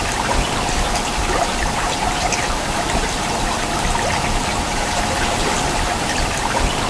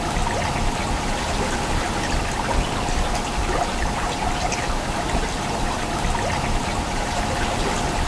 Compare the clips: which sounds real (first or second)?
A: second